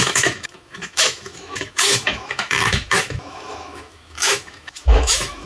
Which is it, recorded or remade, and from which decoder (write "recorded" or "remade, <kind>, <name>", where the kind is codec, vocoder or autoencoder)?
remade, autoencoder, DAC-VAE